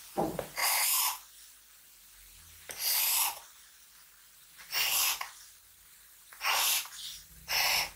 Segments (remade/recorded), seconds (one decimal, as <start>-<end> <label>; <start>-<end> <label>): 0.0-8.0 recorded